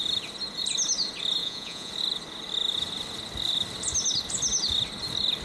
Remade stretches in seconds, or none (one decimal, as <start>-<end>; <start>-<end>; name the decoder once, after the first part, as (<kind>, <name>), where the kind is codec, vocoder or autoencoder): 1.4-1.9 (vocoder, Vocos)